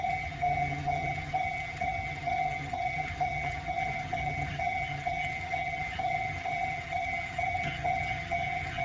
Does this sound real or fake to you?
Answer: fake